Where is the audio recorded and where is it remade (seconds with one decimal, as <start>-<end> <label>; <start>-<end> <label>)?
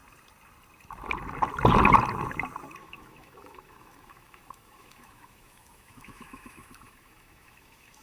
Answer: 0.0-2.8 recorded; 2.8-8.0 remade